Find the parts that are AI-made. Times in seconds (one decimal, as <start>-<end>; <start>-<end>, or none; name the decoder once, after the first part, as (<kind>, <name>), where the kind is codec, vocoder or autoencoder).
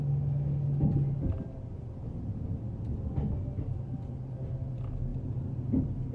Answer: 5.1-6.1 (vocoder, BigVGAN v2)